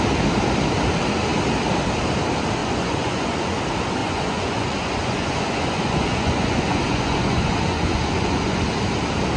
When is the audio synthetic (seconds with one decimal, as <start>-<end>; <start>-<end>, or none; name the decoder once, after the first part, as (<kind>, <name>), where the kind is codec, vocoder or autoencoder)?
2.6-3.6 (vocoder, Vocos); 4.0-8.6